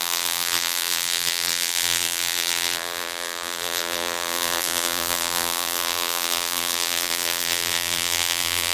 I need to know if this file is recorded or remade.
remade